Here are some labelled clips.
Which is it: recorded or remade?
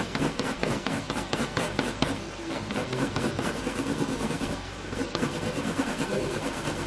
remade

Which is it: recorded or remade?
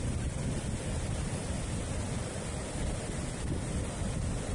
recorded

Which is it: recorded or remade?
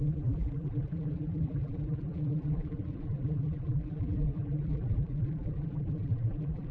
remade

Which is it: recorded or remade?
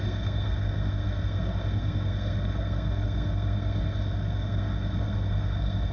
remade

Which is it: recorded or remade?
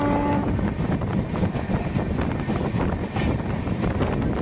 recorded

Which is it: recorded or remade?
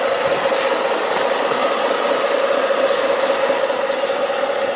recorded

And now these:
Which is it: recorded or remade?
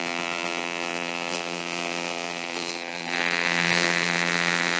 remade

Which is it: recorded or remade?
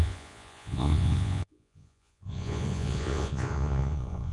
remade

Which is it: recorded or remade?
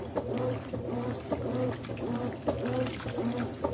recorded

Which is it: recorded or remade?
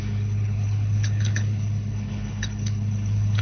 remade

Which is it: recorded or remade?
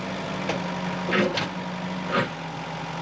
recorded